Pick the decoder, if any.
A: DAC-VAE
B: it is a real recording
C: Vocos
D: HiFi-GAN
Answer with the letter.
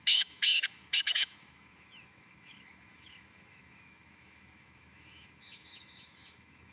A